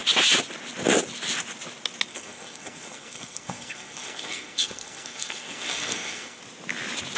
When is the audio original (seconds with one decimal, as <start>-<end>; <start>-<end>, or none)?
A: 0.0-2.1; 6.4-7.2

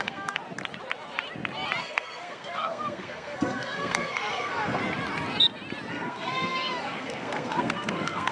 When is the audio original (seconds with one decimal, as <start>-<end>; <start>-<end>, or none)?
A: 0.4-1.8; 4.8-5.9

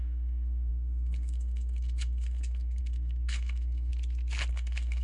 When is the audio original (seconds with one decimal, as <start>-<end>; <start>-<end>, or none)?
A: 3.9-4.5

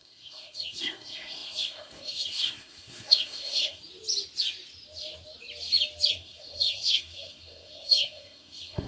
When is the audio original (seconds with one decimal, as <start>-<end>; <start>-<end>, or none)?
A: 3.8-6.1